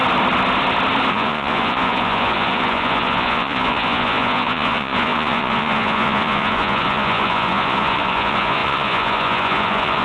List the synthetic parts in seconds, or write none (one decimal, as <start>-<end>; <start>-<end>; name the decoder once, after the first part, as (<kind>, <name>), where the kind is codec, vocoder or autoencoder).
1.1-10.0 (vocoder, Vocos)